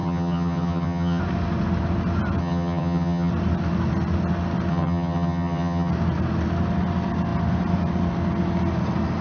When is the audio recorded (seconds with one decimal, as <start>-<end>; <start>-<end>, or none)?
1.2-2.4; 3.3-4.7; 5.9-9.2